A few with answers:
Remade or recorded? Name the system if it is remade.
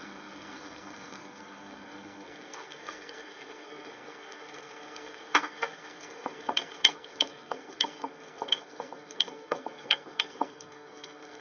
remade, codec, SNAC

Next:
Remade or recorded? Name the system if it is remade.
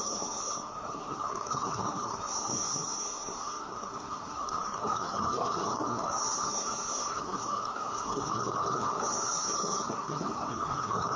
remade, codec, SNAC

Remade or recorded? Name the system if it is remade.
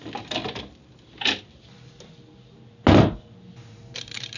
recorded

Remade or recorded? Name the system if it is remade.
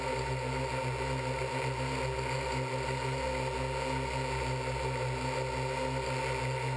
recorded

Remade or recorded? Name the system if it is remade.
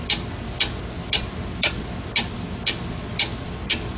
recorded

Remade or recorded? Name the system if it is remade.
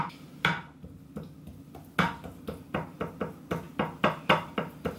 recorded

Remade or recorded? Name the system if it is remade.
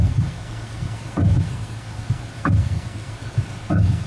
remade, codec, SNAC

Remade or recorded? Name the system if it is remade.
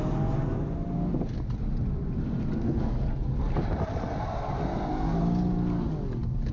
recorded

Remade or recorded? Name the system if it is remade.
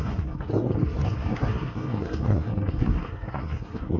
remade, codec, SNAC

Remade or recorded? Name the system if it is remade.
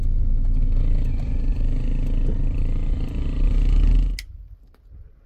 recorded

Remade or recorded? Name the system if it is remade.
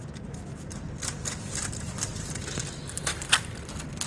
recorded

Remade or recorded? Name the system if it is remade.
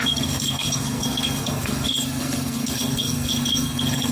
remade, codec, SNAC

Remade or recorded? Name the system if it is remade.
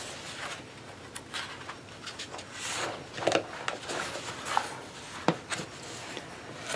recorded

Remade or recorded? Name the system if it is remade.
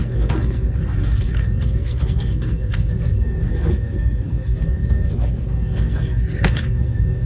remade, codec, SNAC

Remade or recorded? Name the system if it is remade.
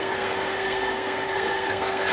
remade, codec, SNAC